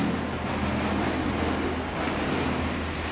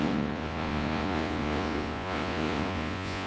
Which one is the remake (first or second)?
second